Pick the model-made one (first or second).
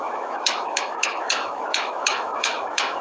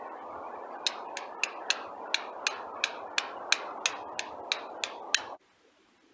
first